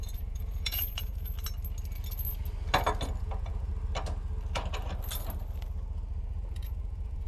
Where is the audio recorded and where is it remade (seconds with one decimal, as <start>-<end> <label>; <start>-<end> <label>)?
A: 0.0-1.3 remade; 1.3-3.2 recorded; 3.2-3.7 remade; 3.7-6.3 recorded; 6.3-7.3 remade